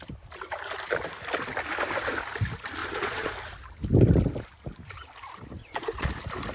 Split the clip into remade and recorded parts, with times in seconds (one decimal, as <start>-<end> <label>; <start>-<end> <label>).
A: 0.0-2.8 recorded; 2.8-3.3 remade; 3.3-5.6 recorded; 5.6-6.1 remade; 6.1-6.5 recorded